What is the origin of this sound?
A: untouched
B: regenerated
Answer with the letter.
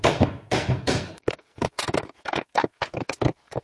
B